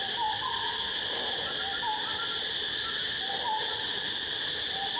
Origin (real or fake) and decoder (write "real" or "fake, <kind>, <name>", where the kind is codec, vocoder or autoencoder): real